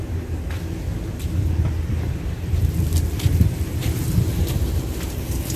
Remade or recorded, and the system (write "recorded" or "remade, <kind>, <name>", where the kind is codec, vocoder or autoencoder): recorded